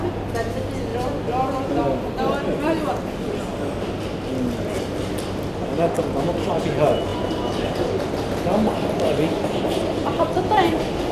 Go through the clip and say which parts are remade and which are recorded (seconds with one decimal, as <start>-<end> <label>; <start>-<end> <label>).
0.0-7.1 recorded; 7.1-8.1 remade; 8.1-11.1 recorded